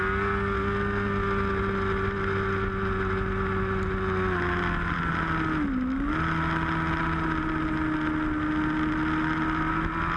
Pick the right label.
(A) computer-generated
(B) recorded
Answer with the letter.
B